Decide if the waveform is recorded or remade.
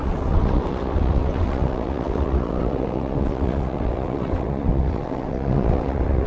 remade